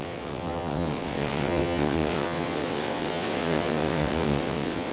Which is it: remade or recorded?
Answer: remade